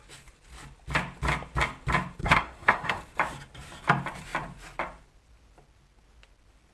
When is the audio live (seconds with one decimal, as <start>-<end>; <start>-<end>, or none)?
0.0-2.2; 3.0-6.7